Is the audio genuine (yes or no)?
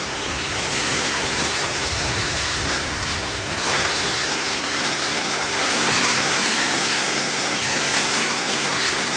no